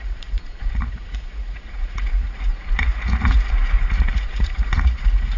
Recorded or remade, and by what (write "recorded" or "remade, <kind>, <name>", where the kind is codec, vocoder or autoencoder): remade, vocoder, Vocos